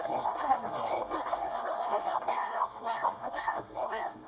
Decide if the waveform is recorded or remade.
remade